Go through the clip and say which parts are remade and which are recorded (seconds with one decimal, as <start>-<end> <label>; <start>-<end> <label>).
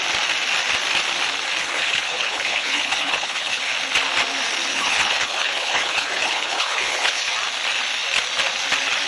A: 0.0-1.6 recorded; 1.6-3.6 remade; 3.6-4.7 recorded; 4.7-7.3 remade; 7.3-9.1 recorded